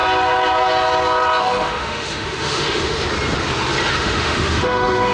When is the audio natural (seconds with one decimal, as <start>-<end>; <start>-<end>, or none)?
0.0-1.4; 3.0-3.9